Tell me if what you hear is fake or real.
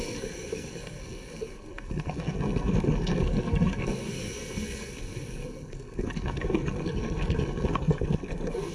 fake